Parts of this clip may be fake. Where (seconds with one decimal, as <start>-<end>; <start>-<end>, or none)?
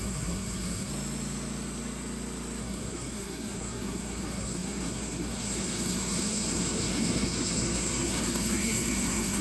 0.0-0.9; 2.6-9.4